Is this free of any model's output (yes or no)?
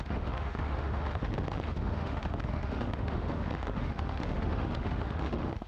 no